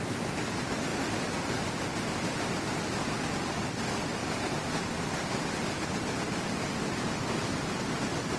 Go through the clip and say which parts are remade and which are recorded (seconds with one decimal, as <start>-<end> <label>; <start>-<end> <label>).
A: 0.0-8.4 recorded